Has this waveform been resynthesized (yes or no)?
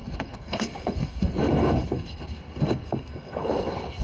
yes